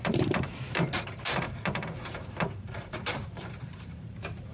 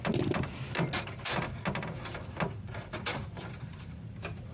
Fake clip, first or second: first